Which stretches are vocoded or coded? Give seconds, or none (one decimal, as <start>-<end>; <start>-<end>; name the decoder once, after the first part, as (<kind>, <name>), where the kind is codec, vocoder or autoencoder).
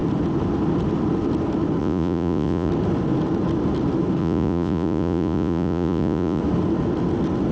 1.8-2.7 (vocoder, Vocos); 4.2-6.4